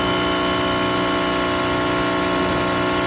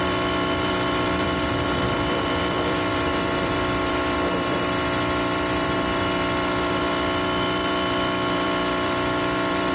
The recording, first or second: first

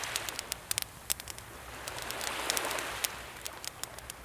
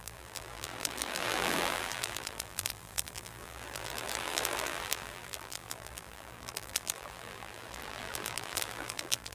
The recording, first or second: first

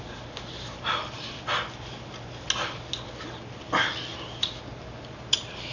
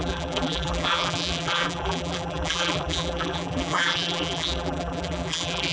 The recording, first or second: first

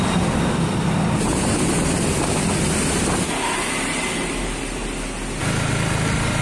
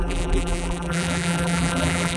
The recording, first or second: first